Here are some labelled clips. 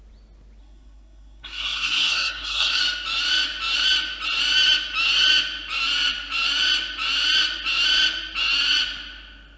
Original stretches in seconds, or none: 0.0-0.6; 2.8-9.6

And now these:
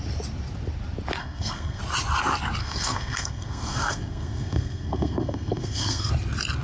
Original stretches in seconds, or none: 0.0-1.2; 1.8-2.6; 6.1-6.6

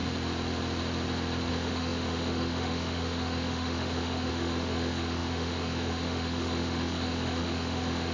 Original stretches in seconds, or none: 0.0-1.5

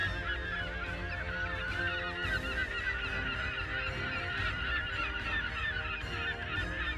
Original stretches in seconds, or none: 0.0-7.0

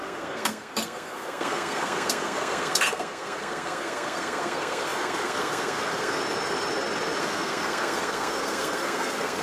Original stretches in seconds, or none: 6.2-7.2

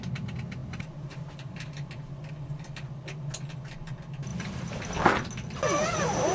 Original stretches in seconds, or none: 0.0-0.6; 2.3-4.3; 5.0-6.3

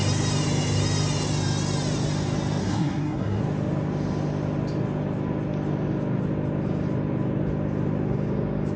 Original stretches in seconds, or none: 0.0-2.6; 3.4-8.8

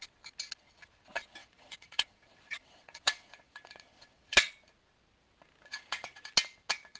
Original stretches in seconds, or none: 0.0-1.4; 4.5-5.7; 6.3-7.0